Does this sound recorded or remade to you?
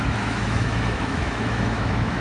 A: remade